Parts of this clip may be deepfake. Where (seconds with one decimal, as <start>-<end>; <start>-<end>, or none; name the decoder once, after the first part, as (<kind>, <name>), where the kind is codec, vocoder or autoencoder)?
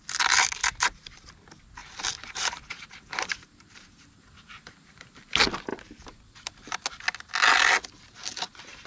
0.6-1.3 (vocoder, BigVGAN v2); 1.8-5.1